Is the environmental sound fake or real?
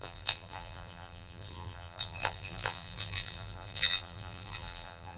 fake